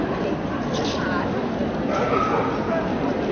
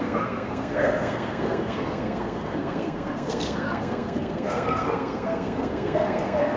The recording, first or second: first